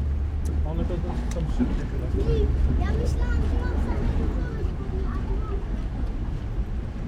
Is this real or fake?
real